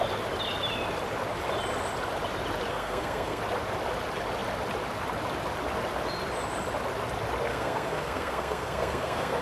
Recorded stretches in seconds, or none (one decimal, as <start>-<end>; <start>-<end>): 0.0-2.7; 3.4-7.5